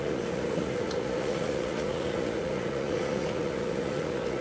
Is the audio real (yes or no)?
no